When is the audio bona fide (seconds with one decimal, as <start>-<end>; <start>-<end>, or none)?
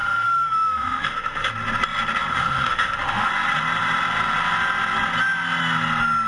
1.5-2.3; 3.3-6.3